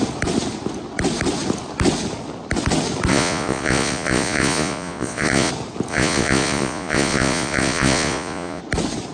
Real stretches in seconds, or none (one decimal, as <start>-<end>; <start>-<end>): 0.0-3.1; 5.5-5.9; 8.6-9.1